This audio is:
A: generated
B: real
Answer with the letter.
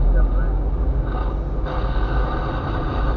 B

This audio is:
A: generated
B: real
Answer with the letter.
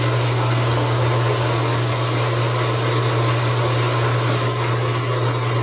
B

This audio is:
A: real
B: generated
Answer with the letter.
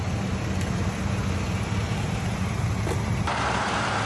A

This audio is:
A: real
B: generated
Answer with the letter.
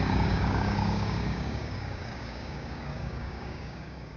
B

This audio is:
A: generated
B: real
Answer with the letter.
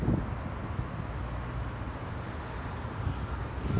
B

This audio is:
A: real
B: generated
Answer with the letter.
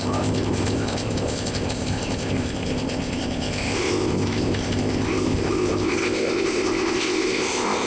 B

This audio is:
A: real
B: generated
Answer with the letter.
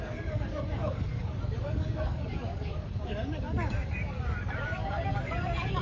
B